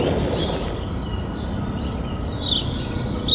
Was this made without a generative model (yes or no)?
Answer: yes